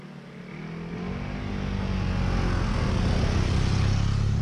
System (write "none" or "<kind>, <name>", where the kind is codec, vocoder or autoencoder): none